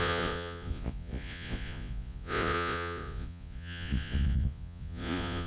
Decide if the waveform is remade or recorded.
remade